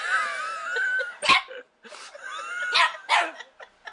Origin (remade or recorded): recorded